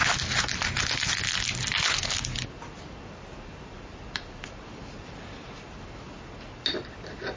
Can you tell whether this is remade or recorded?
recorded